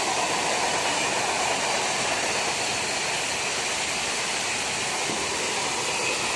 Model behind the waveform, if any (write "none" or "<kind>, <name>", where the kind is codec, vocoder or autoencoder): none